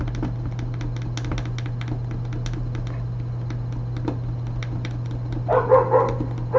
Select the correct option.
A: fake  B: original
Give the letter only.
B